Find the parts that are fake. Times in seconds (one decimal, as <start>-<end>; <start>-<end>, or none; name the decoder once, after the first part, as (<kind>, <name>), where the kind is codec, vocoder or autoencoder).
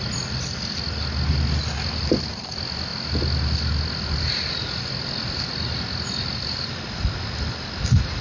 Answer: none